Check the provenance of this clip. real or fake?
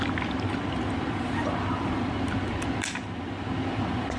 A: real